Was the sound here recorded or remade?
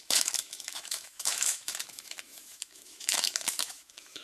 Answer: remade